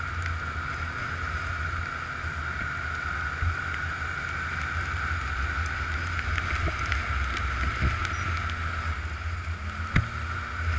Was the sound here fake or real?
real